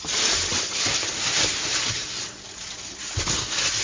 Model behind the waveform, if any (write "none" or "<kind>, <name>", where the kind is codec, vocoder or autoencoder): none